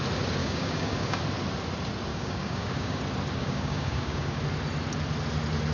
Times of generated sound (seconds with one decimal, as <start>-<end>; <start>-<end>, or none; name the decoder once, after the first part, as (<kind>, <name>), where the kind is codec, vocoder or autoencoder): 0.4-1.2 (codec, DAC); 2.1-3.0; 3.4-4.4